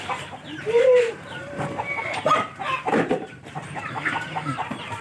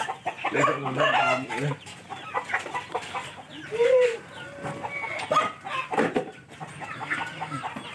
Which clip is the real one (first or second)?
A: second